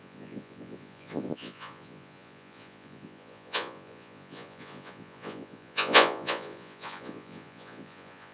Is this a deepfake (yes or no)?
yes